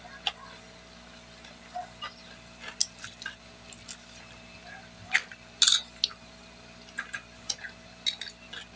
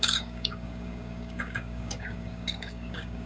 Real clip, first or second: first